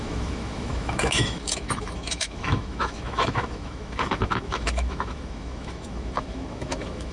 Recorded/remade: remade